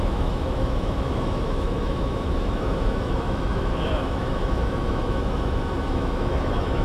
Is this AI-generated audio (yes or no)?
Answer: yes